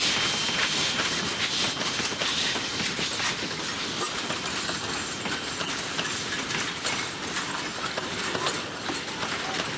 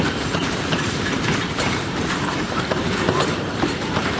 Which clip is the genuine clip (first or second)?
first